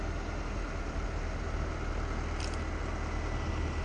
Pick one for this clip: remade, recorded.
recorded